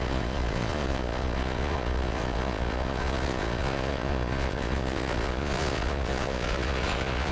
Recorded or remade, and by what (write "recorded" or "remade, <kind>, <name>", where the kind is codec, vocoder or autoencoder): remade, vocoder, Vocos